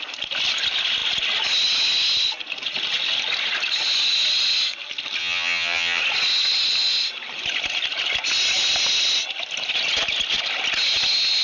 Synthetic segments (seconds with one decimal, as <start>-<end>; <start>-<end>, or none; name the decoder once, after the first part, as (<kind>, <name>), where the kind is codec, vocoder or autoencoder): 5.2-6.0 (vocoder, HiFi-GAN)